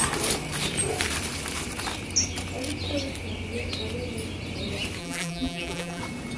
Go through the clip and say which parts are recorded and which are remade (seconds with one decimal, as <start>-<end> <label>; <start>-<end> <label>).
0.0-5.0 recorded; 5.0-6.0 remade; 6.0-6.4 recorded